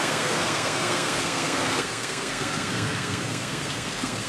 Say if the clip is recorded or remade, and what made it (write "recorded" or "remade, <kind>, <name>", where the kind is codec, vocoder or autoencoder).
remade, codec, SNAC